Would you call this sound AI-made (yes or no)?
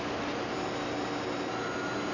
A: no